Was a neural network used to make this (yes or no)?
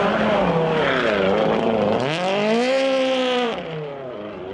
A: no